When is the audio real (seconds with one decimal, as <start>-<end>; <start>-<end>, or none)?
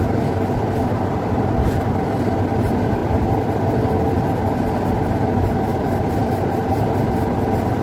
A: 6.2-6.8